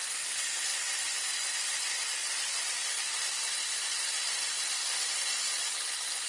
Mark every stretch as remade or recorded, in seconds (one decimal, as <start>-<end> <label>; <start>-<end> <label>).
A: 0.0-6.3 recorded